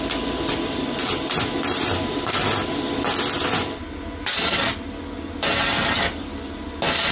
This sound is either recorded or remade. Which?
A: recorded